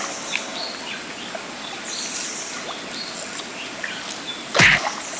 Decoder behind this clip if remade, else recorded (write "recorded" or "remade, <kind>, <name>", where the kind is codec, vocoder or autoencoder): recorded